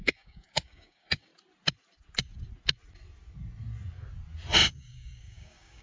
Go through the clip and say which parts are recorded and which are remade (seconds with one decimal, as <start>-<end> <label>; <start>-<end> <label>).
0.0-1.3 remade; 1.3-4.8 recorded; 4.8-5.8 remade